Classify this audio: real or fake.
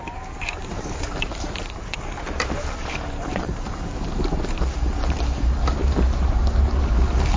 fake